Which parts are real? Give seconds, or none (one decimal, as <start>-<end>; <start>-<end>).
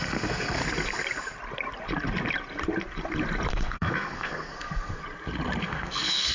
0.6-3.5; 5.0-5.6